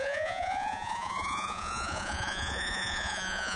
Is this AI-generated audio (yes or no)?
yes